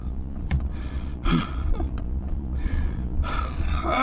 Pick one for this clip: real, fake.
fake